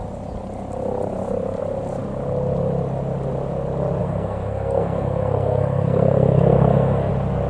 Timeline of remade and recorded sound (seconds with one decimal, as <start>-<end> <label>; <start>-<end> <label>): 0.0-4.0 recorded; 4.0-7.1 remade; 7.1-7.5 recorded